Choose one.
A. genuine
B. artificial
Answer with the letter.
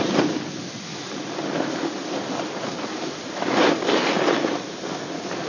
A